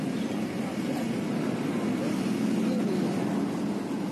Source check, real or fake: real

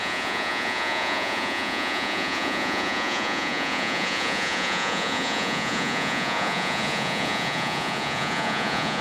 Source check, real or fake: fake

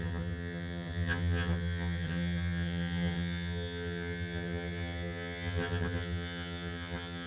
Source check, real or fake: fake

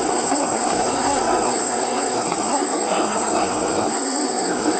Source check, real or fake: fake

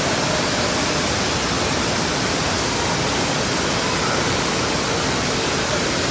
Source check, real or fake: real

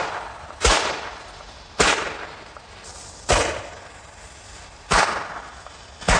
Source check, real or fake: real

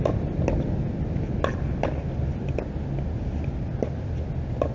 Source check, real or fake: real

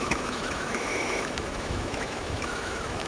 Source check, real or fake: fake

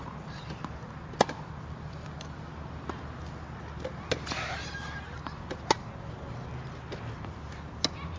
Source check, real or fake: real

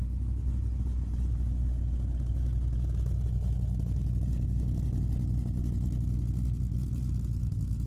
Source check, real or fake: real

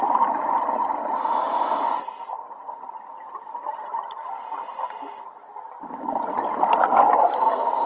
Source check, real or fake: real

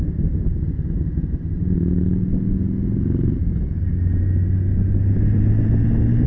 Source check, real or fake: real